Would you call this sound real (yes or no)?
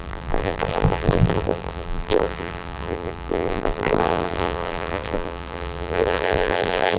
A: no